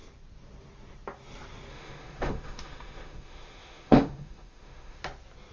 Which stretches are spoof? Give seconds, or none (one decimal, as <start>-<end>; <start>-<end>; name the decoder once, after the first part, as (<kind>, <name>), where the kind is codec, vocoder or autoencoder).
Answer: 1.7-5.0 (autoencoder, DAC-VAE)